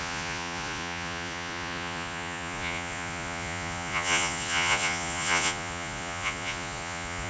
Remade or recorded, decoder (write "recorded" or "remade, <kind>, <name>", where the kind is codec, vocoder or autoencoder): remade, vocoder, Vocos